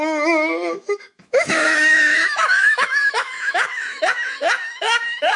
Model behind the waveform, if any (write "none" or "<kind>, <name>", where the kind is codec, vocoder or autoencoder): autoencoder, DAC-VAE